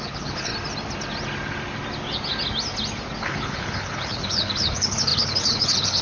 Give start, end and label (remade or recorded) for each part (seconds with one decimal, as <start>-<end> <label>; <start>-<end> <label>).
0.0-0.5 remade; 0.5-3.2 recorded; 3.2-6.0 remade